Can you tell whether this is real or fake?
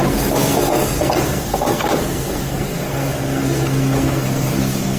fake